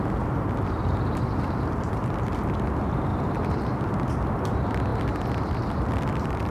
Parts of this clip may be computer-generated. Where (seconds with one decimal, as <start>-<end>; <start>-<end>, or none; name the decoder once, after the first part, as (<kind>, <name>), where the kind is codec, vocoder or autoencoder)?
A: 3.1-4.3 (vocoder, BigVGAN v2)